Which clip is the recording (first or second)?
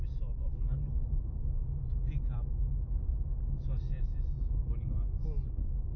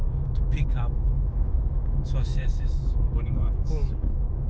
first